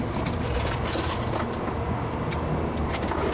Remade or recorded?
recorded